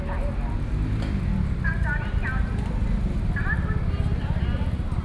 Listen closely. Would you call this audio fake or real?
real